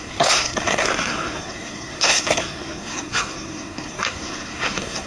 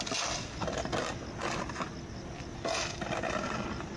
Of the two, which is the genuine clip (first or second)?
second